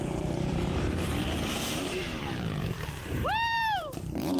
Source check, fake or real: fake